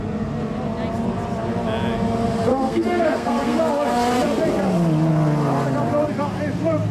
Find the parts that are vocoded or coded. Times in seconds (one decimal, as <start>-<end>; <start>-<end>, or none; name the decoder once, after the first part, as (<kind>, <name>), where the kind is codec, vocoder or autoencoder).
2.5-3.7 (codec, SNAC)